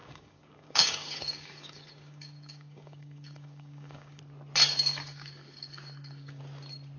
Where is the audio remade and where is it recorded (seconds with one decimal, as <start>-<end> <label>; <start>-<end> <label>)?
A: 0.0-4.2 remade; 4.2-4.9 recorded; 4.9-6.4 remade; 6.4-7.0 recorded